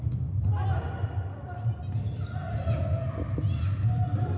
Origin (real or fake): real